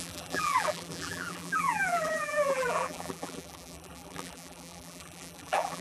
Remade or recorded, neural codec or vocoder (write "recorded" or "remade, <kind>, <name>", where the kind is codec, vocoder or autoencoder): remade, vocoder, BigVGAN v2